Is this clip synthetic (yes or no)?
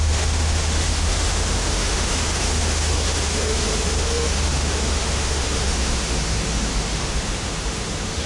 yes